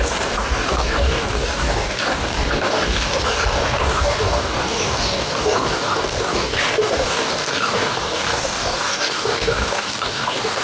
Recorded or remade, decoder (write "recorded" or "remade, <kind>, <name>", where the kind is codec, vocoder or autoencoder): remade, codec, DAC